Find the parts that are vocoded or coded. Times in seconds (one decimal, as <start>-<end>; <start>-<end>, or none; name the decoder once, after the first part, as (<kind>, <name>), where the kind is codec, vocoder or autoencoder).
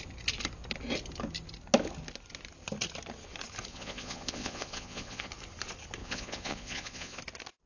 3.7-5.3 (vocoder, Vocos); 6.0-7.2